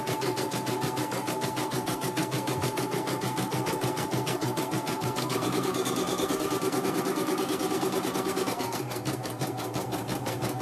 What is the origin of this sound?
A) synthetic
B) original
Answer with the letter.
A